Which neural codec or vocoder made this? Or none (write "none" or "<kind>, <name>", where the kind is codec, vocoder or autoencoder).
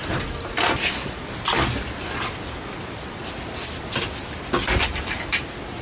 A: none